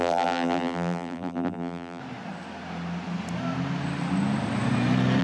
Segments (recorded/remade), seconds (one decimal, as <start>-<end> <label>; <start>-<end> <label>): 0.0-2.0 remade; 2.0-5.2 recorded